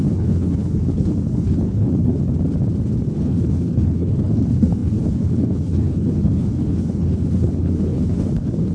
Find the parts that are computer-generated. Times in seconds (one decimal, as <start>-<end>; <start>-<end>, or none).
0.0-2.2; 3.1-8.7